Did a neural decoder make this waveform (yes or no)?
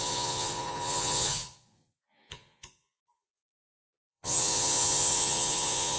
yes